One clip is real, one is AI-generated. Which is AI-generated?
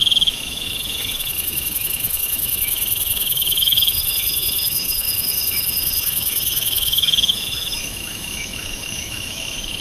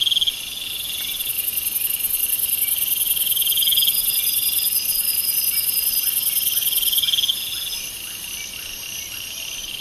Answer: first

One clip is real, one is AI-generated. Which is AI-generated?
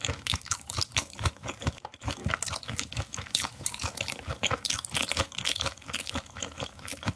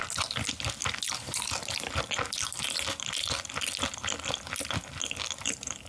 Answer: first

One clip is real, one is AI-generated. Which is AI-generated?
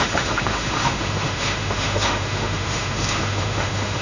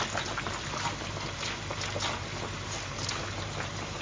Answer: first